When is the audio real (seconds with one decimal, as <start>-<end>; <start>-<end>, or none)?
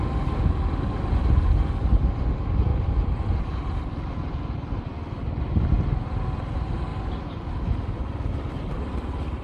0.0-2.7; 3.4-9.4